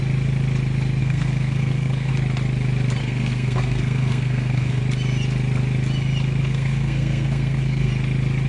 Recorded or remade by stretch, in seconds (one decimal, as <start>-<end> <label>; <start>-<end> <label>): 0.0-1.0 recorded; 1.0-2.1 remade; 2.1-3.0 recorded; 3.0-4.8 remade; 4.8-6.4 recorded; 6.4-7.9 remade; 7.9-8.5 recorded

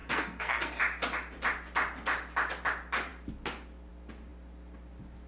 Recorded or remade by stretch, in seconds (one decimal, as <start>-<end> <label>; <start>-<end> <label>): 0.0-0.8 remade; 0.8-5.3 recorded

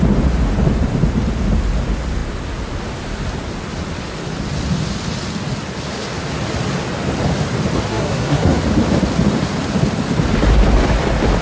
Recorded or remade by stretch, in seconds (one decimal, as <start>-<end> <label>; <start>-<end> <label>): 0.0-7.9 recorded; 7.9-8.6 remade; 8.6-11.4 recorded

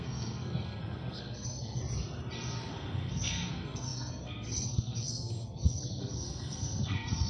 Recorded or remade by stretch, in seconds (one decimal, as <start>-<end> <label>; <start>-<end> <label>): 0.0-1.8 remade; 1.8-2.7 recorded; 2.7-7.3 remade

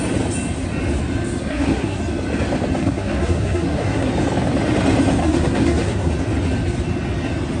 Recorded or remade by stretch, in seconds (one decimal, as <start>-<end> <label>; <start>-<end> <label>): 0.0-1.4 recorded; 1.4-2.0 remade; 2.0-2.8 recorded; 2.8-4.1 remade; 4.1-5.2 recorded; 5.2-6.1 remade; 6.1-7.6 recorded

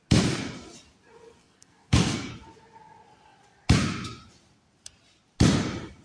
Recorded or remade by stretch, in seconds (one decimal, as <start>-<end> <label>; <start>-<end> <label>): 0.0-1.4 recorded; 1.4-2.3 remade; 2.3-6.0 recorded

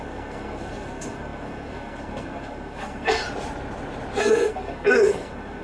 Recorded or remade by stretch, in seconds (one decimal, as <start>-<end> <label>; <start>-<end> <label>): 0.0-3.2 remade; 3.2-4.2 recorded; 4.2-5.6 remade

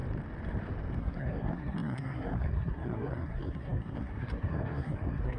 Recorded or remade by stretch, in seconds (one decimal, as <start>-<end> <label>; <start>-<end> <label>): 0.0-1.0 recorded; 1.0-5.4 remade